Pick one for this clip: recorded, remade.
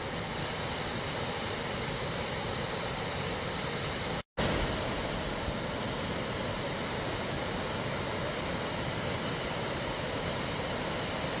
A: recorded